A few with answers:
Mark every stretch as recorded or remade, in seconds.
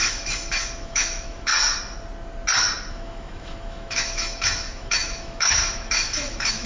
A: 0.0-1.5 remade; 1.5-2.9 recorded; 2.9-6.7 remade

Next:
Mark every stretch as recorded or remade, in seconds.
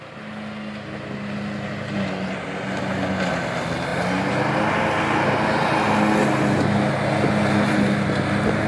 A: 0.0-8.7 recorded